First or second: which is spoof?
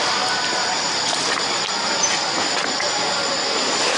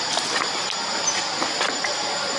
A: second